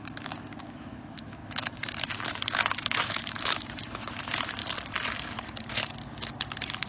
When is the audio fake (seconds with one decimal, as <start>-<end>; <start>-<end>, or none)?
0.0-4.6